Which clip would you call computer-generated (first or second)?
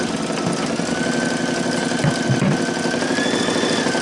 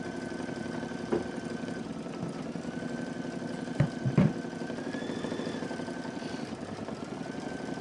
second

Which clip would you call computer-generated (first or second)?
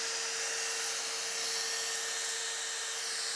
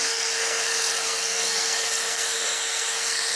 second